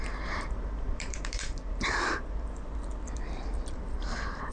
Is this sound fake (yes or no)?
yes